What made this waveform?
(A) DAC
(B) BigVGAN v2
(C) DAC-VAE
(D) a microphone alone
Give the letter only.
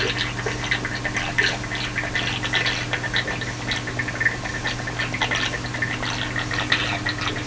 D